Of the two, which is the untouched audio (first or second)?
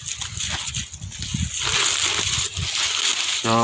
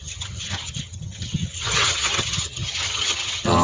first